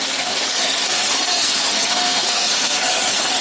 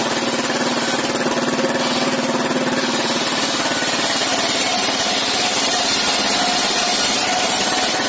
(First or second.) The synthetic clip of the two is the first